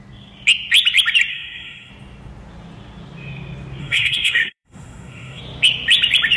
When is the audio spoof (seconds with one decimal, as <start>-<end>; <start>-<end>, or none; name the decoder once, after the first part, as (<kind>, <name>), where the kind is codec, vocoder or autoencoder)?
1.3-1.9 (codec, SNAC); 3.8-5.4

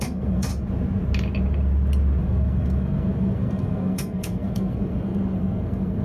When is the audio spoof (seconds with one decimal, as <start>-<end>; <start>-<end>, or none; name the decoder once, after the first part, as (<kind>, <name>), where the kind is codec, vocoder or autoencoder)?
0.0-0.5 (codec, SNAC); 2.2-6.0

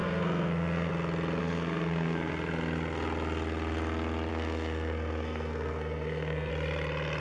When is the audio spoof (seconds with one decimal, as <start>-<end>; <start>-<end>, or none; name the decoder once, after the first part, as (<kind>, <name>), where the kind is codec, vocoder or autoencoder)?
0.0-0.9 (codec, SNAC); 1.4-2.3; 4.3-6.5

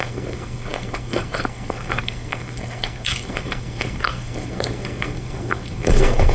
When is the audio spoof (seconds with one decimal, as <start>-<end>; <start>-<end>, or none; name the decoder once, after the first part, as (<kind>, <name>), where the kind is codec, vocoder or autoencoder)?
0.0-6.3 (codec, SNAC)

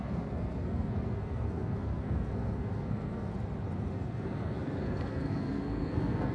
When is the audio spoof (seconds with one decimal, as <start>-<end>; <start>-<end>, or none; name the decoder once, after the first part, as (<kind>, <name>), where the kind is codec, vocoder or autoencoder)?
0.0-3.3 (codec, SNAC); 3.9-6.3

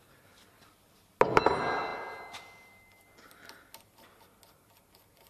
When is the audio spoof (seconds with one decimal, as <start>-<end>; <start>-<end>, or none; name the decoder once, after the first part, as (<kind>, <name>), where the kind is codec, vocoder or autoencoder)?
none

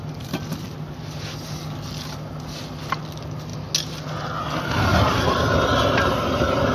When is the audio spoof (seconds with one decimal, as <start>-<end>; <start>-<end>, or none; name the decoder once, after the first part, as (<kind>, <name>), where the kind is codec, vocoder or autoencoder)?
none

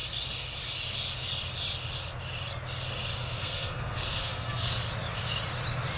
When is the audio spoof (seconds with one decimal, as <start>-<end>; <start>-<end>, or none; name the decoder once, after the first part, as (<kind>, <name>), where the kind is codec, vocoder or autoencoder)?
3.2-4.7 (codec, SNAC)